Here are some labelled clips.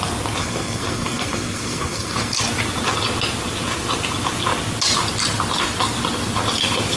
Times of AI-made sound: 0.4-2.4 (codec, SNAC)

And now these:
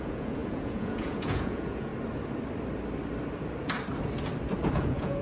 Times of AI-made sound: 0.0-1.9 (vocoder, Vocos); 4.7-5.2

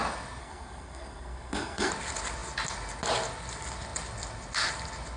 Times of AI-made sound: 0.4-1.9 (codec, SNAC)

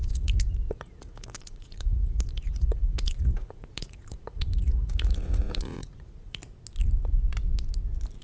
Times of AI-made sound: 0.0-6.4 (vocoder, Vocos)

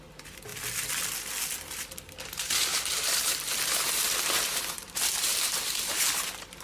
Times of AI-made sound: 2.7-6.0 (vocoder, BigVGAN v2)